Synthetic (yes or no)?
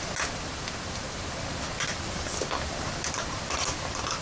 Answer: no